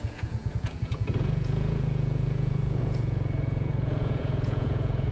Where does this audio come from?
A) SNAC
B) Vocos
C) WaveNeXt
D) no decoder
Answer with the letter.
B